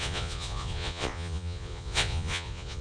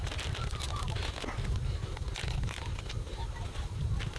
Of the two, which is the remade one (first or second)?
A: first